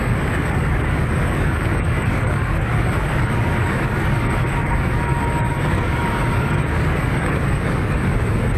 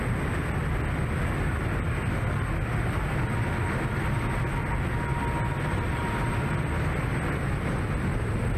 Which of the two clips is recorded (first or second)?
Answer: second